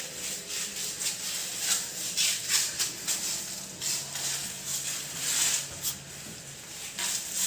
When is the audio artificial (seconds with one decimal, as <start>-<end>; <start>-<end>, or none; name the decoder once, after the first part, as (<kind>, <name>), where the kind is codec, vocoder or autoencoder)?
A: 1.4-2.8 (vocoder, BigVGAN v2)